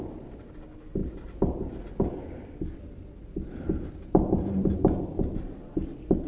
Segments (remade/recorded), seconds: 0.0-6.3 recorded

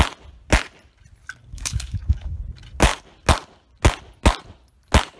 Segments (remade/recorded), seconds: 0.0-1.5 recorded; 1.5-2.4 remade; 2.4-5.2 recorded